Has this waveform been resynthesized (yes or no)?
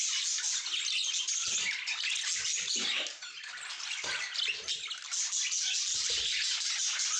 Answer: no